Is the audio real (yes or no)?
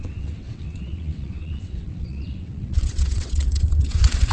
no